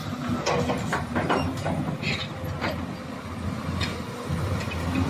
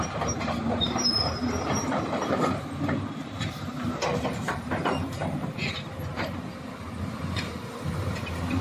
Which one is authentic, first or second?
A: first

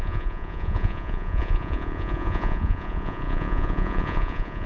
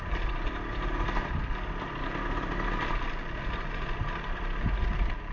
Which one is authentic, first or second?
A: second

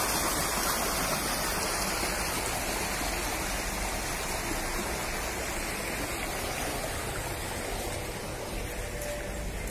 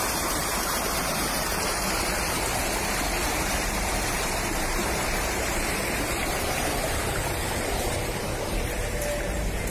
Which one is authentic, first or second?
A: first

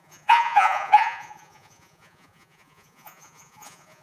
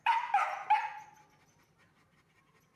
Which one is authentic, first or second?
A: second